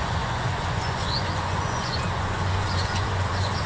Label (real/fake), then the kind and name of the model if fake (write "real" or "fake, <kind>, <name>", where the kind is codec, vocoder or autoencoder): fake, vocoder, Vocos